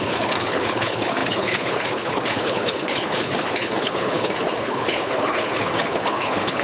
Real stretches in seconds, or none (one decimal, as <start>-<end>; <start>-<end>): none